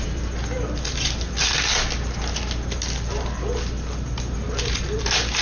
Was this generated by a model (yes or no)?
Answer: no